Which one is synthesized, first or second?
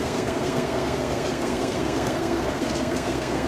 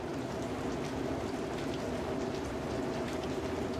first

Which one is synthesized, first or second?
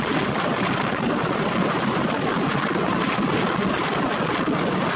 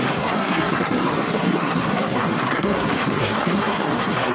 second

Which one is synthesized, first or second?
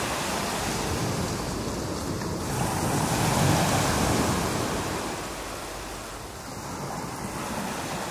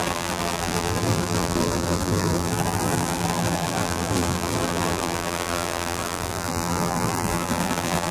second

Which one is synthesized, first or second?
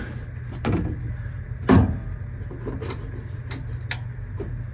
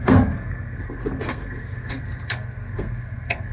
second